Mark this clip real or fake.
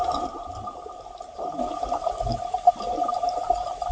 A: real